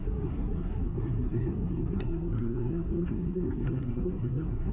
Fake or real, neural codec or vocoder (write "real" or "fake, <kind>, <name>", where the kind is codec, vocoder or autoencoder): fake, codec, SNAC